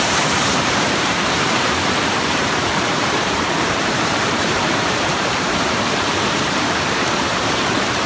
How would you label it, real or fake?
fake